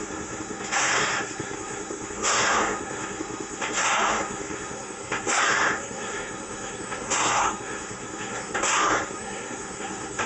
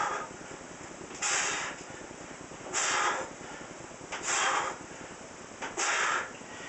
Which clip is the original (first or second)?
second